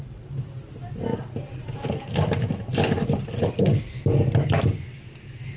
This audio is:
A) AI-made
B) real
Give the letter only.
B